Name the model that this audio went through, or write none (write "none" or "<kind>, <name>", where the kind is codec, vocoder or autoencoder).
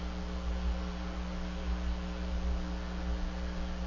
none